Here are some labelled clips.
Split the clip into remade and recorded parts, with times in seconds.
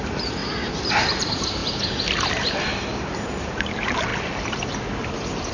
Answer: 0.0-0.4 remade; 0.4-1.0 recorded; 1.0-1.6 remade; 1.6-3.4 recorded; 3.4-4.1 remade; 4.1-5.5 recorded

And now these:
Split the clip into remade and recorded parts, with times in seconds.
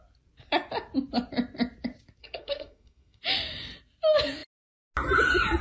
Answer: 0.0-2.2 recorded; 2.2-3.2 remade; 3.2-5.6 recorded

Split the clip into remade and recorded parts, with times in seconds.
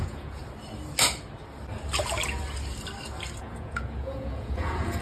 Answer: 0.0-0.4 remade; 0.4-3.4 recorded; 3.4-5.0 remade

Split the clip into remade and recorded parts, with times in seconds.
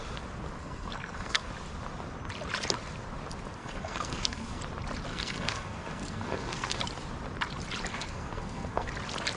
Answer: 0.0-0.6 recorded; 0.6-1.5 remade; 1.5-3.6 recorded; 3.6-4.6 remade; 4.6-5.1 recorded; 5.1-6.8 remade; 6.8-7.9 recorded; 7.9-8.9 remade; 8.9-9.4 recorded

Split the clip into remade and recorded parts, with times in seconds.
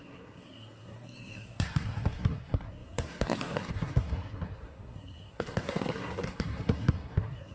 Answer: 0.0-7.5 remade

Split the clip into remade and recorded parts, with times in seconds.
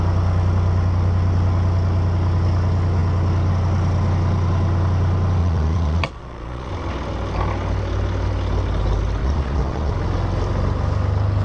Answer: 0.0-5.4 recorded; 5.4-6.7 remade; 6.7-9.2 recorded; 9.2-9.9 remade; 9.9-11.4 recorded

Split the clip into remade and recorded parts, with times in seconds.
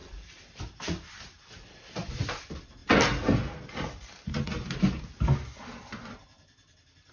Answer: 0.0-7.1 recorded